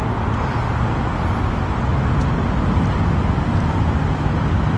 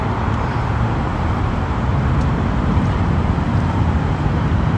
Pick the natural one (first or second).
first